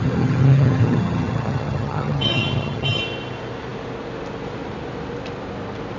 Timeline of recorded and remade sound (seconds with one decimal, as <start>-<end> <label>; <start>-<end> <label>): 0.0-3.0 remade; 3.0-6.0 recorded